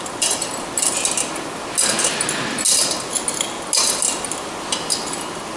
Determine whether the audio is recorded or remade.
recorded